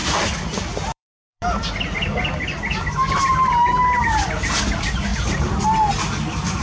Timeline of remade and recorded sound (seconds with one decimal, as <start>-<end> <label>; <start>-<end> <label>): 0.0-4.0 remade; 4.0-6.6 recorded